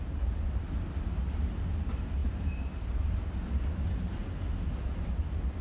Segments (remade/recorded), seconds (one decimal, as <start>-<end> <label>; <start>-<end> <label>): 0.0-5.6 recorded